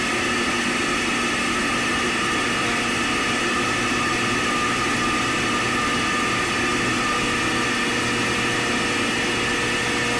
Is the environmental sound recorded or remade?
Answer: recorded